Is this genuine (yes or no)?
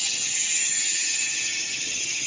no